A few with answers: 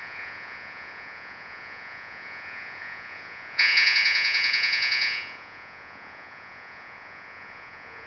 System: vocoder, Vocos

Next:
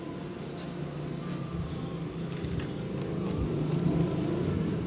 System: none